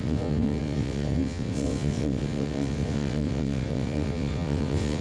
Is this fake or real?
fake